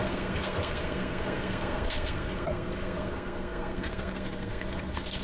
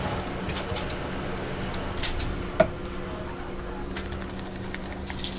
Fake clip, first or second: first